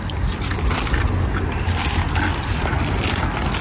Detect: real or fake real